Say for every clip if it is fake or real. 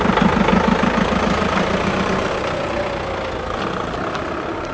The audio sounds real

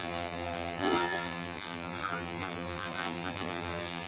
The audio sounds fake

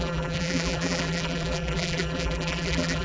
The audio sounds fake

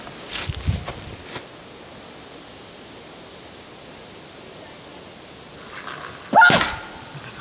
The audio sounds real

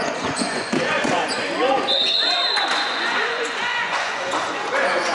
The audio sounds fake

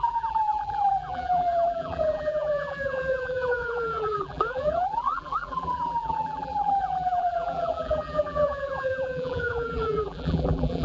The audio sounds fake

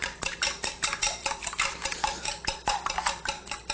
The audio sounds fake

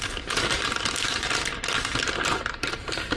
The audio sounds real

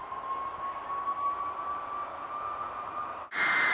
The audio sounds real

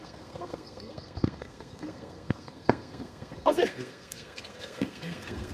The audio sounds fake